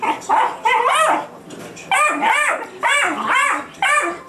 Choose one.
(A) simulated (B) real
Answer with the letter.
A